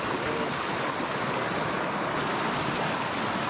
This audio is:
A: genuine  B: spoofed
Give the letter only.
A